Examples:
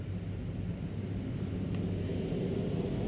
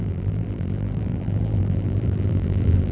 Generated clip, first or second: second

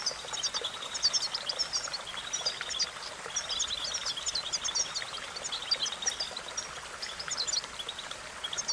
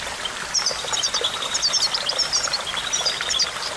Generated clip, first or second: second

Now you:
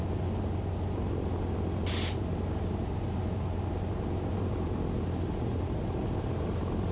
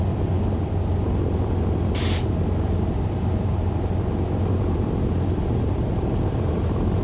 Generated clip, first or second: second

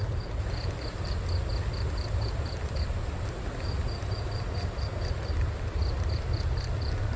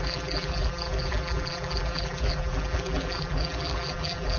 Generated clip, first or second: second